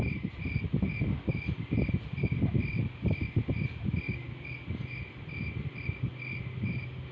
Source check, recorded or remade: recorded